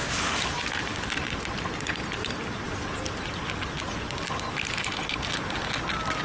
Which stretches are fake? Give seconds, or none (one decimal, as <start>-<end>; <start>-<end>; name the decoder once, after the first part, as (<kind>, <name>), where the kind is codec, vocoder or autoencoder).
none